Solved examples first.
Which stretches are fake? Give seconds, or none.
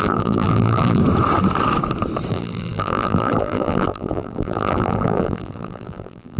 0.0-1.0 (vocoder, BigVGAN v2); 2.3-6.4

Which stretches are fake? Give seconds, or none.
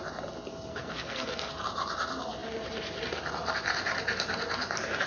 0.7-1.5 (codec, SNAC)